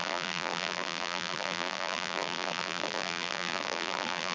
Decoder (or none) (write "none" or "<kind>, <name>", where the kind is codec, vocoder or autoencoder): vocoder, BigVGAN v2